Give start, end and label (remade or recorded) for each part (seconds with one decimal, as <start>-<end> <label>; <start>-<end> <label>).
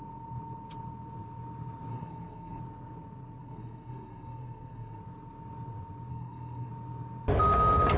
0.0-1.9 recorded; 1.9-2.6 remade; 2.6-3.4 recorded; 3.4-5.0 remade; 5.0-6.1 recorded; 6.1-6.7 remade; 6.7-8.0 recorded